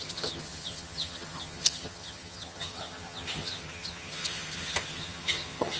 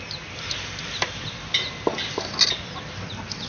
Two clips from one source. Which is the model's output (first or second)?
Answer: first